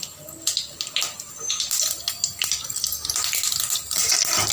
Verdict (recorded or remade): recorded